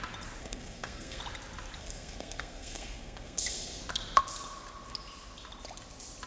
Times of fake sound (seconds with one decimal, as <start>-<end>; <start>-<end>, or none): 0.4-1.2; 1.8-3.8